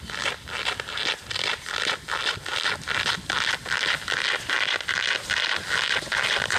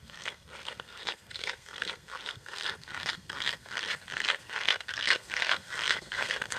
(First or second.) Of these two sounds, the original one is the first